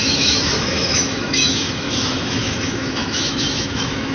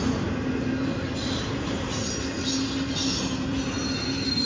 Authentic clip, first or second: second